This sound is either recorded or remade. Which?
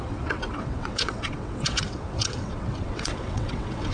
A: remade